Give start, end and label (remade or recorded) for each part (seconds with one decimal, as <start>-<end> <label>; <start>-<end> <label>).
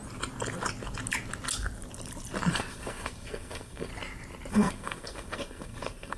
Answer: 0.0-2.5 recorded; 2.5-3.9 remade; 3.9-4.5 recorded; 4.5-6.2 remade